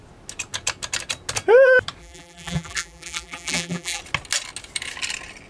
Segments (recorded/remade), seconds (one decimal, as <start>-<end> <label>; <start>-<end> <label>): 0.0-2.0 recorded; 2.0-4.0 remade; 4.0-5.5 recorded